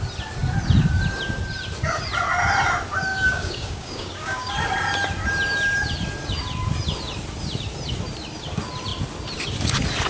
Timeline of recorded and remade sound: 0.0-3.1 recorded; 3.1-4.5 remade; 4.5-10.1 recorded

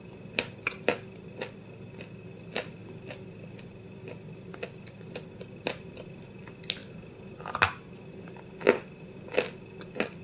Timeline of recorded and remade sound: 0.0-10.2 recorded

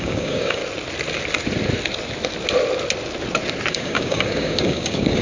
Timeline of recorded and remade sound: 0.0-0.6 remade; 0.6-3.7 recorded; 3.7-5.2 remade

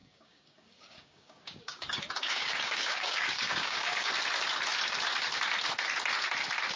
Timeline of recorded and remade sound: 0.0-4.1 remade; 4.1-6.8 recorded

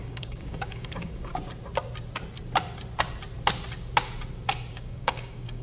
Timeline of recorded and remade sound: 0.0-1.3 remade; 1.3-4.7 recorded; 4.7-5.6 remade

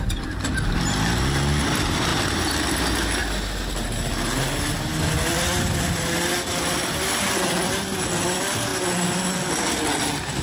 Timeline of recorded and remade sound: 0.0-10.4 recorded

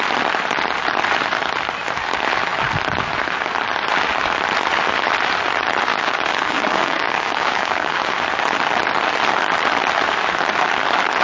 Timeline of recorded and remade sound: 0.0-5.9 recorded; 5.9-8.2 remade; 8.2-11.2 recorded

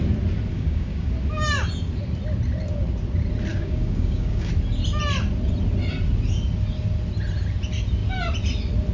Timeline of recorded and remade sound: 0.0-0.5 recorded; 0.5-1.1 remade; 1.1-3.5 recorded; 3.5-4.5 remade; 4.5-8.9 recorded